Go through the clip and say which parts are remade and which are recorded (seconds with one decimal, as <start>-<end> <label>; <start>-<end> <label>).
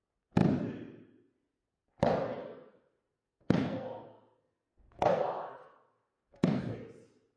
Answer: 0.0-2.4 recorded; 2.4-6.8 remade; 6.8-7.4 recorded